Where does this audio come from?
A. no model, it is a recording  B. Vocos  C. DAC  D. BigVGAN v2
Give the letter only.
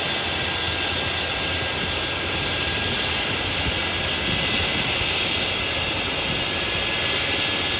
A